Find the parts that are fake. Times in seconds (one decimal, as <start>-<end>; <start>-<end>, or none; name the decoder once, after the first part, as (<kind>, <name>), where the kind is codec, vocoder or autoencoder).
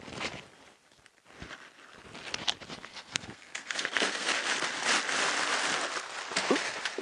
2.9-4.3 (codec, SNAC)